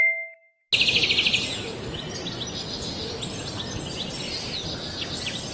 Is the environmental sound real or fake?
real